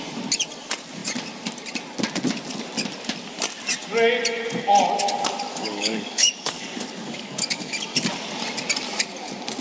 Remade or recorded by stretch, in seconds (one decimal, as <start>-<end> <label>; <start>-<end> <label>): 0.0-5.5 recorded; 5.5-7.7 remade; 7.7-9.6 recorded